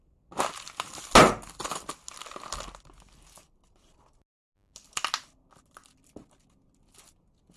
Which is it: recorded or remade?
recorded